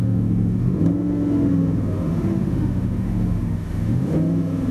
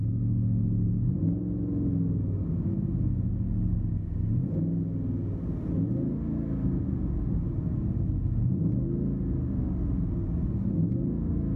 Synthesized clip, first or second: first